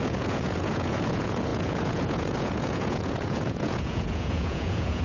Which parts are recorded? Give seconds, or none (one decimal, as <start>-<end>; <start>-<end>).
none